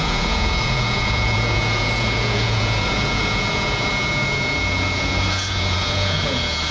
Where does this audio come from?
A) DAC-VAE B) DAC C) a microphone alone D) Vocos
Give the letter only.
D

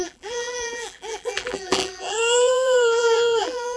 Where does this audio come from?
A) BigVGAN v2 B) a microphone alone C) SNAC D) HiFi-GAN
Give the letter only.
A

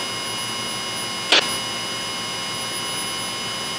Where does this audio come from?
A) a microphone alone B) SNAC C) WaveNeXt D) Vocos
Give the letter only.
A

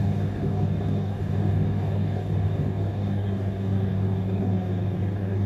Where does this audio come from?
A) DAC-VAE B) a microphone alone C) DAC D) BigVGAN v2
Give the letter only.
C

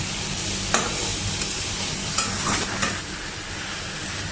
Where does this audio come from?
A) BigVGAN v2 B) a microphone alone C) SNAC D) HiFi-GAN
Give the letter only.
B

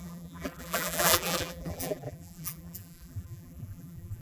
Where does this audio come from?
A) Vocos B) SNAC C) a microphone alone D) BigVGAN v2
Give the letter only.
D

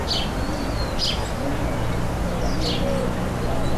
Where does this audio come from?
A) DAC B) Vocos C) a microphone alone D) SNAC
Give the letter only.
C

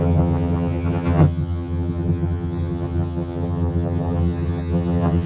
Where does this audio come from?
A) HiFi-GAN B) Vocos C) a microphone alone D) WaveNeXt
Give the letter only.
A